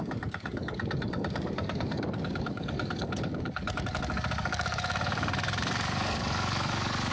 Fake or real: fake